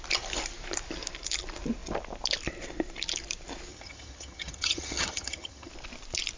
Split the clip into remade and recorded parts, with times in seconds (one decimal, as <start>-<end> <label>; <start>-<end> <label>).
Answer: 0.0-3.7 recorded; 3.7-5.7 remade; 5.7-6.4 recorded

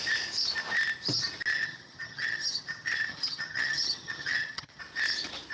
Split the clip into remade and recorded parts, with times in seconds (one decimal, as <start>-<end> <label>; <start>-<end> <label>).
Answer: 0.0-1.5 recorded; 1.5-4.8 remade; 4.8-5.5 recorded

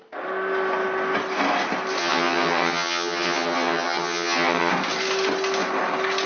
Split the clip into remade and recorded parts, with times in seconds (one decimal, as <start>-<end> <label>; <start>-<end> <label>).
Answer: 0.0-2.0 recorded; 2.0-4.7 remade; 4.7-6.3 recorded